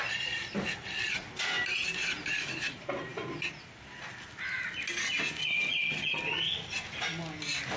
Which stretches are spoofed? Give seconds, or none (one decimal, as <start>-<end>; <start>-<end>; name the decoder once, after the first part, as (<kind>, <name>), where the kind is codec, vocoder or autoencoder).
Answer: 5.4-6.2 (vocoder, HiFi-GAN)